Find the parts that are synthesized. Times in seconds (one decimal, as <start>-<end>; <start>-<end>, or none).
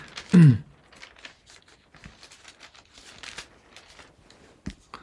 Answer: none